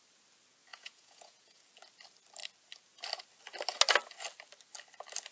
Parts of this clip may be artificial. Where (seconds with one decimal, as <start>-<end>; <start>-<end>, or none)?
0.7-1.6